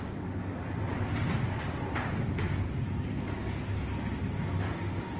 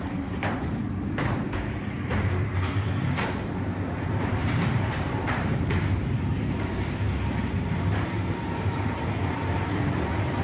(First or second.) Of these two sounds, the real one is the first